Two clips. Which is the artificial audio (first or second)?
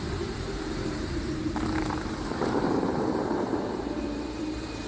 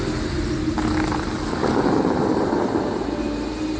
first